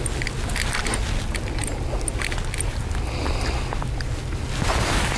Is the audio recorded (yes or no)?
yes